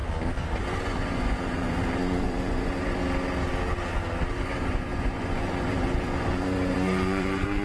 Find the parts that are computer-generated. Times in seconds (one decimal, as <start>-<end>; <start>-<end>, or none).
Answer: 0.6-3.0; 4.3-7.6